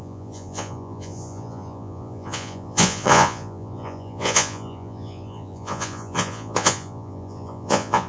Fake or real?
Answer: fake